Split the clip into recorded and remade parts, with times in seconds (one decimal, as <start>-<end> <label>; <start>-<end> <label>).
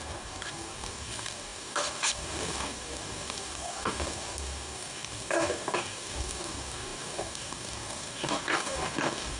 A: 0.0-9.4 remade